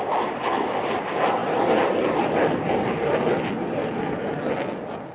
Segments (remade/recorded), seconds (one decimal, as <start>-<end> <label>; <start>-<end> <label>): 0.0-5.1 recorded